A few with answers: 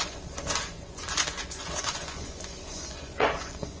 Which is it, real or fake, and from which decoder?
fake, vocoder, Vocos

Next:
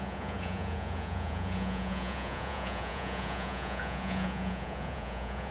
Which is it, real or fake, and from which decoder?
fake, vocoder, Vocos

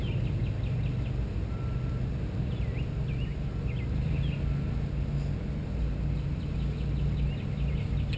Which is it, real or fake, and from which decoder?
real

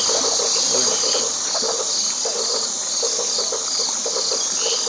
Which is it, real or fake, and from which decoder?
real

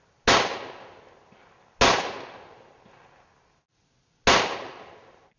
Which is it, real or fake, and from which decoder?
real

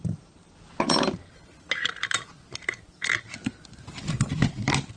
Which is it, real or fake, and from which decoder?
real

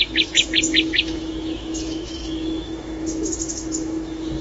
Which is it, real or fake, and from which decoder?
fake, autoencoder, DAC-VAE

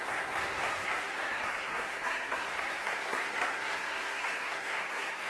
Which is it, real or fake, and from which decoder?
fake, codec, SNAC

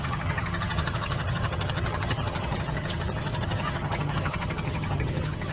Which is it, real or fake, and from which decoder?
fake, vocoder, HiFi-GAN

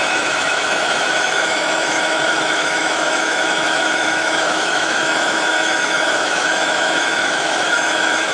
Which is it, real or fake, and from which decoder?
fake, autoencoder, DAC-VAE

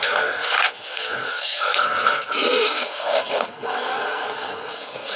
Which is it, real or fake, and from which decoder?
fake, codec, SNAC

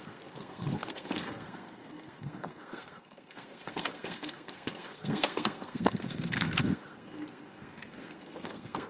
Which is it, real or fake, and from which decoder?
fake, codec, SNAC